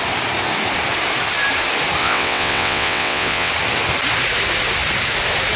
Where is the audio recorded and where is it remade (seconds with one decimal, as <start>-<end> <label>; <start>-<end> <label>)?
0.0-2.0 recorded; 2.0-3.5 remade; 3.5-5.6 recorded